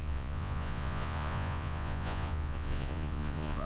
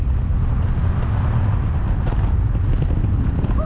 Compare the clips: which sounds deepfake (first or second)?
first